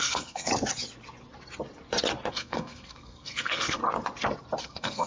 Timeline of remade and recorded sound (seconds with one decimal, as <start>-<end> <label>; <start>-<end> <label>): 0.0-0.5 remade; 0.5-2.3 recorded; 2.3-3.8 remade; 3.8-4.6 recorded; 4.6-5.1 remade